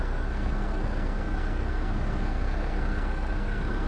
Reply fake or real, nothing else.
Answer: fake